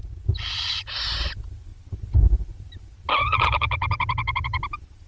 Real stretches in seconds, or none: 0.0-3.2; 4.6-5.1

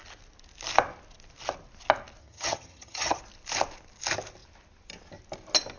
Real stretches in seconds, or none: 0.0-2.2; 3.2-5.8